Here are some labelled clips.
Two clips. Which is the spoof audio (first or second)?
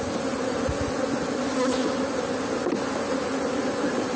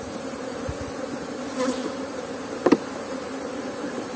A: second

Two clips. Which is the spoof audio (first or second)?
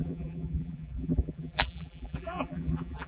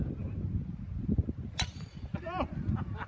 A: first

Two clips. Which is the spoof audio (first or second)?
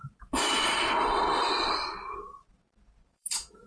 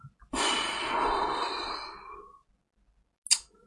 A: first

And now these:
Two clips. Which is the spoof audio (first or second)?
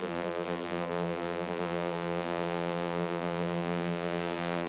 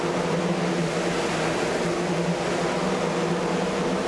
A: first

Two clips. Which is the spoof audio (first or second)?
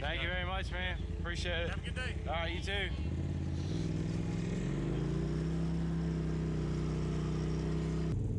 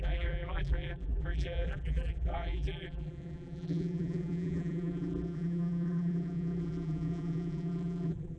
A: second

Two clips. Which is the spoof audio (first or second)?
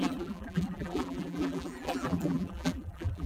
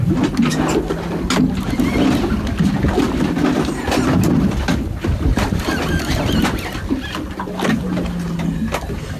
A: first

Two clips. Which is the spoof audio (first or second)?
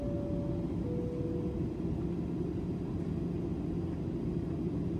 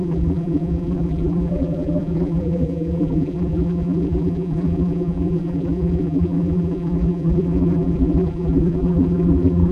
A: second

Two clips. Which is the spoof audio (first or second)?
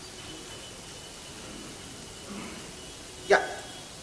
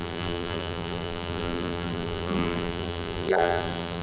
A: second